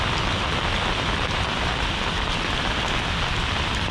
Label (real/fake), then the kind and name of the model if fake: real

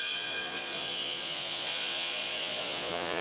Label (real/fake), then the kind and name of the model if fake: fake, vocoder, Vocos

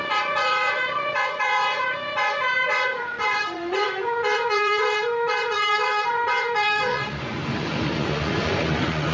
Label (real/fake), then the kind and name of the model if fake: fake, vocoder, Vocos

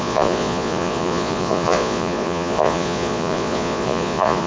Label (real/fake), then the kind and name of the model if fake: fake, vocoder, Vocos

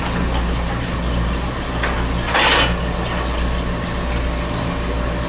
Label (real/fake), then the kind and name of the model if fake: real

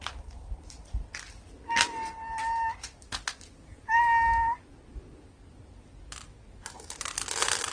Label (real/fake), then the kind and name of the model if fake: real